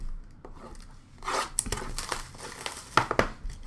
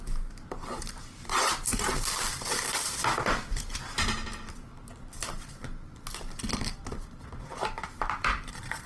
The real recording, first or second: first